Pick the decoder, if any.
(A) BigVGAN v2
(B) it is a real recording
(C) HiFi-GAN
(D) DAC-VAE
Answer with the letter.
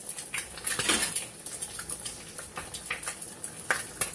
B